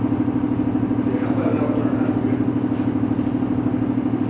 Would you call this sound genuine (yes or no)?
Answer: yes